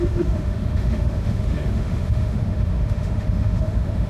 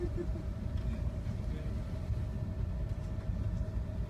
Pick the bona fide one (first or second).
second